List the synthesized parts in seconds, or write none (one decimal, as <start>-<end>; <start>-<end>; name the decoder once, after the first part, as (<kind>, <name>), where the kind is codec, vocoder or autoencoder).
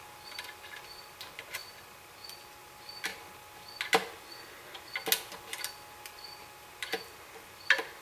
none